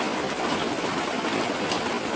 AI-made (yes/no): yes